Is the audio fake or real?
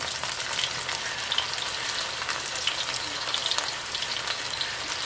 real